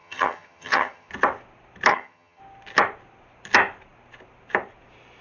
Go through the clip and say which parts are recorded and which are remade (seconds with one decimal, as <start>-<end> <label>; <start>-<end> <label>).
0.0-1.1 remade; 1.1-1.9 recorded; 1.9-2.4 remade; 2.4-5.2 recorded